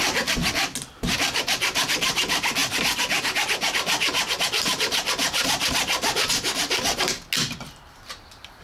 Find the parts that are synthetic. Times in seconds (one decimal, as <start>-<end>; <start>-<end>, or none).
none